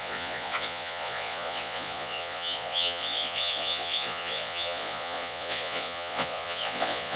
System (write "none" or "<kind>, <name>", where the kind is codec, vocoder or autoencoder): vocoder, Vocos